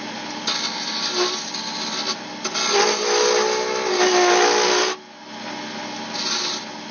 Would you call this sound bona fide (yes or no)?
yes